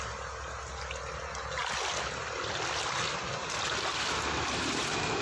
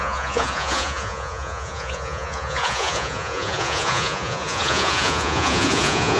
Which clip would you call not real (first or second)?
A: second